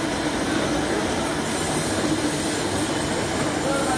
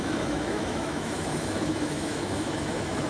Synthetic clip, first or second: second